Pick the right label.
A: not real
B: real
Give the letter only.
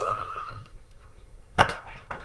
A